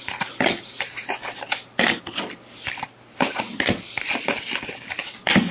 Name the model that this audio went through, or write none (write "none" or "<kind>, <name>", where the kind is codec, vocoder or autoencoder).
none